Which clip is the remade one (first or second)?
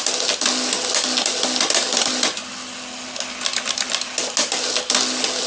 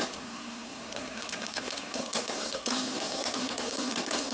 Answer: second